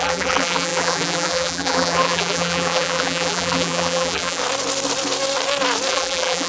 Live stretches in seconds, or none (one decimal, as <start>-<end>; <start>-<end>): 4.4-5.9